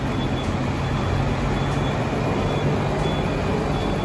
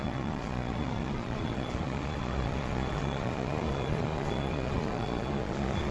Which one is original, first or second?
first